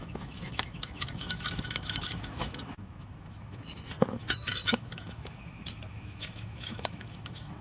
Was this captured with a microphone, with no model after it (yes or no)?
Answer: no